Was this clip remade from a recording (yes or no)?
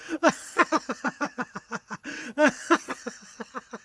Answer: yes